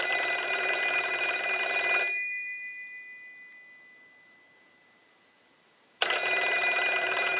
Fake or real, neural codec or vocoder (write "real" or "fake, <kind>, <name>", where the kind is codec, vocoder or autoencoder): real